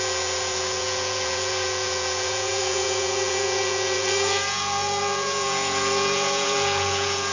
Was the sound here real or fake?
fake